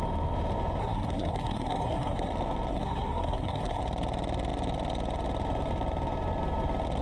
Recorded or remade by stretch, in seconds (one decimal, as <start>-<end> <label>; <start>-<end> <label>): 0.0-0.8 recorded; 0.8-2.3 remade; 2.3-2.7 recorded; 2.7-3.8 remade; 3.8-7.0 recorded